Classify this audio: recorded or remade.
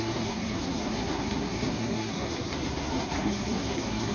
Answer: remade